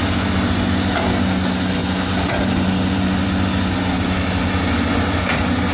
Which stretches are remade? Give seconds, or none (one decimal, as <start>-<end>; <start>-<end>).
none